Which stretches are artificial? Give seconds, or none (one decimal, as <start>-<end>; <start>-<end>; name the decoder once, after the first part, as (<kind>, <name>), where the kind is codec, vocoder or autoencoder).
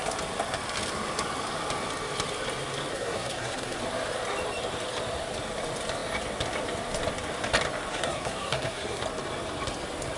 2.9-3.8 (codec, SNAC); 7.9-9.0